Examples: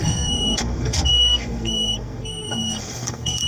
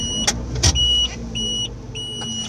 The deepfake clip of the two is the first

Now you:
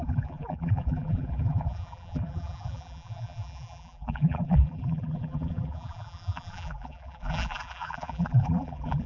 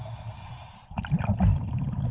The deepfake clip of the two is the first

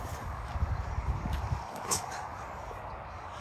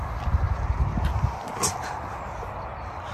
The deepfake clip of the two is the first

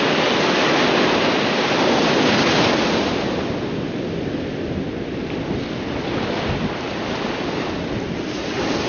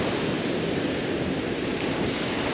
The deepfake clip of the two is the second